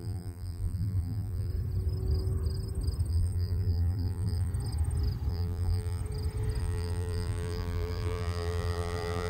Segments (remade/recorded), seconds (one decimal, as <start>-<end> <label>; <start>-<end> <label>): 0.0-1.5 remade; 1.5-3.1 recorded; 3.1-4.5 remade; 4.5-5.3 recorded; 5.3-6.0 remade; 6.0-6.6 recorded; 6.6-9.3 remade